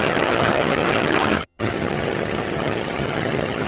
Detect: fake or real fake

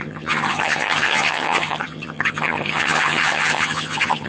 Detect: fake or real fake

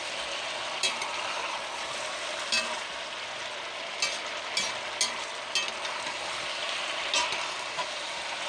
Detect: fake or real real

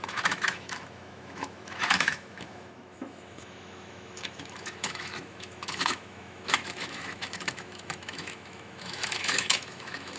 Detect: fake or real fake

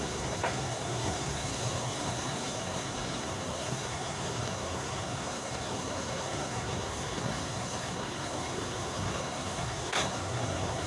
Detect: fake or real fake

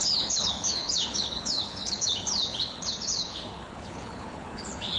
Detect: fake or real fake